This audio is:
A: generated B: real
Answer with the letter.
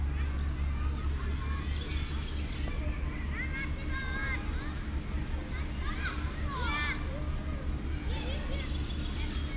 B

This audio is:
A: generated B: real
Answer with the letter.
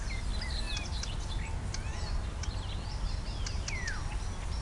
B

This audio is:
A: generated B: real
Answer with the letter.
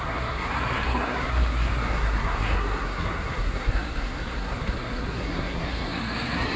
A